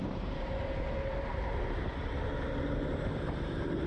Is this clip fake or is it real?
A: fake